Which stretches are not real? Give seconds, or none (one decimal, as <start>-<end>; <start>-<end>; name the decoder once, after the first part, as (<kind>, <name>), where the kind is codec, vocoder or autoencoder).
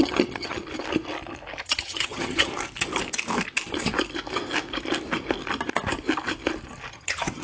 0.0-0.6 (vocoder, HiFi-GAN); 1.6-2.5; 6.9-7.4